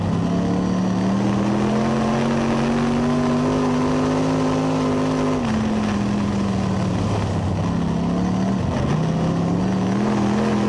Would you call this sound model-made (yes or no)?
no